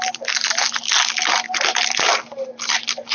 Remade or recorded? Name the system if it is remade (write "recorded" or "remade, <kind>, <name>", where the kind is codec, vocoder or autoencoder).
recorded